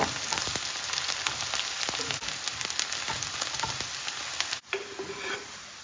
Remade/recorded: recorded